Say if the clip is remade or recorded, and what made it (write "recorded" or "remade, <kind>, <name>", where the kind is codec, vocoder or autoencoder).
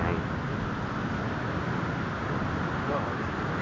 recorded